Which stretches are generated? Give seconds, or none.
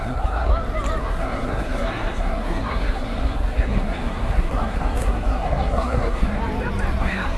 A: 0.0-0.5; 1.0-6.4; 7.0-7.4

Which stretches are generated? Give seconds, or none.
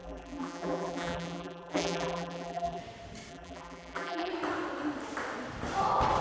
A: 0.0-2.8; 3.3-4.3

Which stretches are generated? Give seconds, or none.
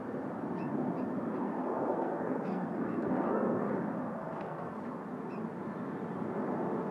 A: 1.4-3.7; 4.2-4.8